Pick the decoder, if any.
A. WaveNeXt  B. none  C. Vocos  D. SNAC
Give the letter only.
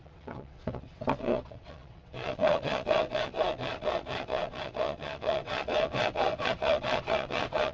A